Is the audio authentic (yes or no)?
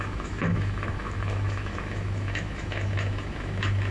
no